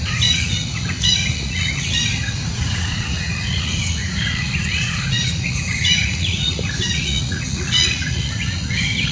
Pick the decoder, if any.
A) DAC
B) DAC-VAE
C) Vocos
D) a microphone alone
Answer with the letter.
C